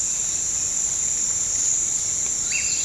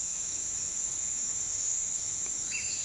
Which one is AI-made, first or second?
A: second